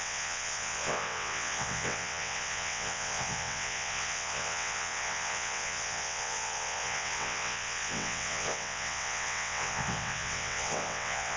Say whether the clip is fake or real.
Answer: fake